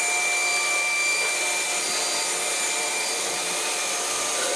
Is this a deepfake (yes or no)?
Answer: yes